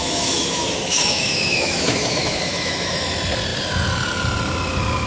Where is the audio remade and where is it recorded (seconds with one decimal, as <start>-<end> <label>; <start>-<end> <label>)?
0.0-3.1 remade; 3.1-5.1 recorded